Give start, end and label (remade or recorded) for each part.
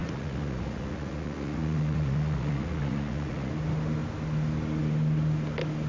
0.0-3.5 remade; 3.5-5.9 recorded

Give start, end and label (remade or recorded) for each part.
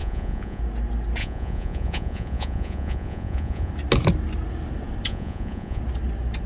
0.0-0.6 remade; 0.6-1.2 recorded; 1.2-3.7 remade; 3.7-5.1 recorded; 5.1-5.8 remade; 5.8-6.5 recorded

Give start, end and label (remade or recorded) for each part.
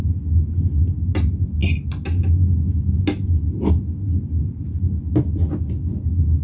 0.0-6.4 recorded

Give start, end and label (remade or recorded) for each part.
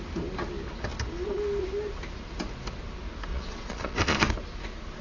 0.0-3.3 recorded; 3.3-4.3 remade; 4.3-5.0 recorded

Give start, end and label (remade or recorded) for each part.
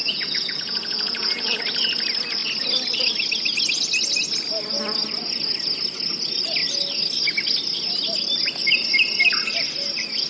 0.0-1.6 remade; 1.6-10.3 recorded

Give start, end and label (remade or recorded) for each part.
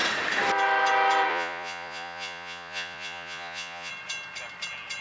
0.0-1.3 recorded; 1.3-3.9 remade; 3.9-5.0 recorded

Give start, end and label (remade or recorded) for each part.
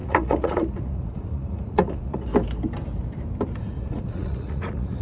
0.0-2.3 remade; 2.3-3.6 recorded; 3.6-5.0 remade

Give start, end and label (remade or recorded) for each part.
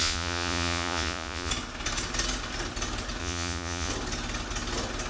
0.0-1.5 remade; 1.5-3.2 recorded; 3.2-3.9 remade; 3.9-5.1 recorded